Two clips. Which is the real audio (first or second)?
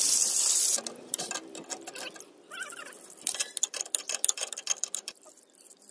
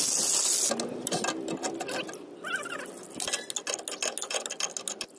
second